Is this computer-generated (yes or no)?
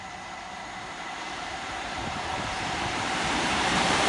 yes